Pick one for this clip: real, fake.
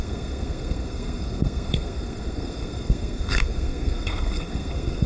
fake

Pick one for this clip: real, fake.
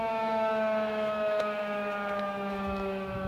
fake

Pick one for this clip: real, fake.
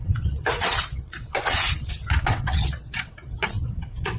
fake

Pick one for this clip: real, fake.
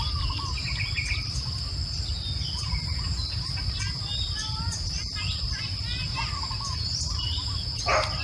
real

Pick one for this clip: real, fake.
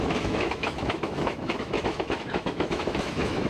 fake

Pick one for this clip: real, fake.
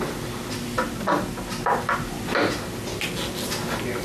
real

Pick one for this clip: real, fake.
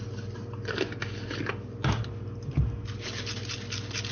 real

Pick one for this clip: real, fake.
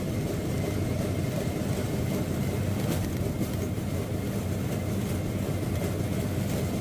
real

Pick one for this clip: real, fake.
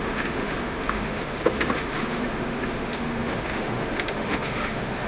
fake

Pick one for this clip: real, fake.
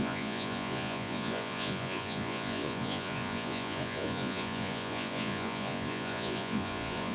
fake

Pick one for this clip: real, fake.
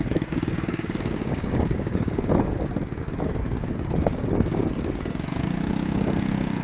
fake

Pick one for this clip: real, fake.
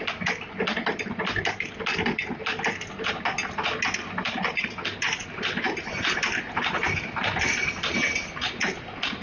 real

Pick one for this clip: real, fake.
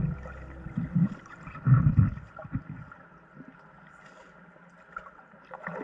fake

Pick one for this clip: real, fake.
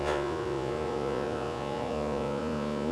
fake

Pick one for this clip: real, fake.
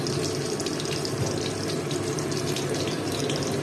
real